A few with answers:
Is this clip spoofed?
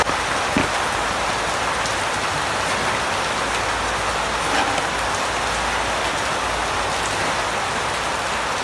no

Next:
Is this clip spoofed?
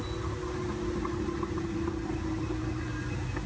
no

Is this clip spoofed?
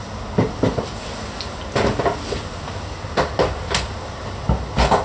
no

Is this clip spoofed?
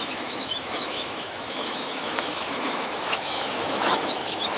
yes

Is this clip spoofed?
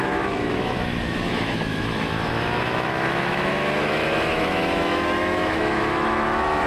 yes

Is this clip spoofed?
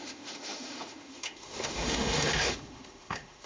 yes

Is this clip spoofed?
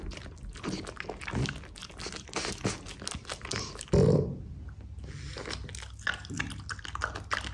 no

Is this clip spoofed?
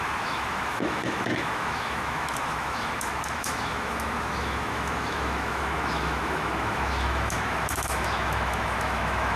yes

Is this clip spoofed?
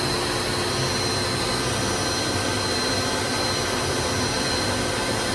no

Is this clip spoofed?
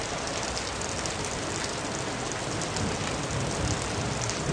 no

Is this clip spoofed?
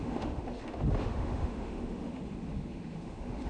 yes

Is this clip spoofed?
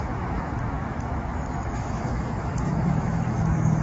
yes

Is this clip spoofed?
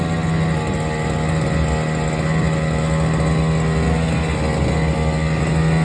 no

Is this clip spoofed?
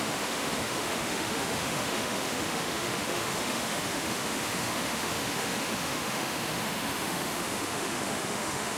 yes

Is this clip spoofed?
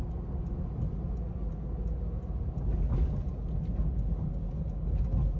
no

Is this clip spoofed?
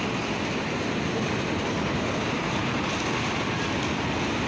no